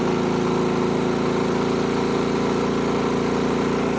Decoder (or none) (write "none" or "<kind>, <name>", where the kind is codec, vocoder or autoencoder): none